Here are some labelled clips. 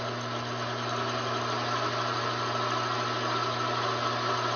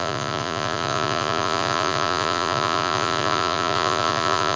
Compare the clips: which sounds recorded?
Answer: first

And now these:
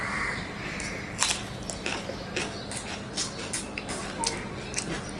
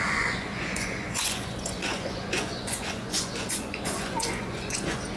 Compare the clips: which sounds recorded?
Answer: first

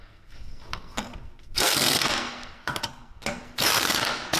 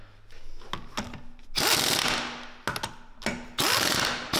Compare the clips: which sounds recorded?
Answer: second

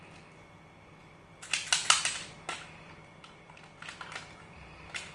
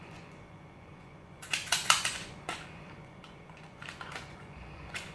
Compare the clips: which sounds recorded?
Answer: first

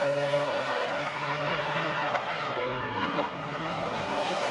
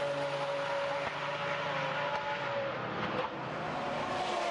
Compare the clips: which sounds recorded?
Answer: second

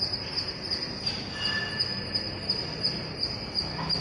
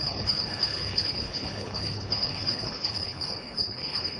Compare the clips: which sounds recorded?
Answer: first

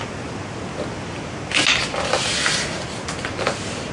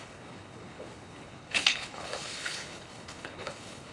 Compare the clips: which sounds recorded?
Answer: first